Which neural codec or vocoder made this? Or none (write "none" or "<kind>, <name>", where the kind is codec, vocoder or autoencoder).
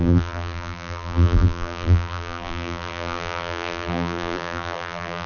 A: vocoder, BigVGAN v2